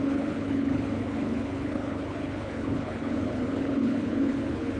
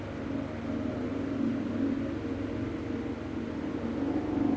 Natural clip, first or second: second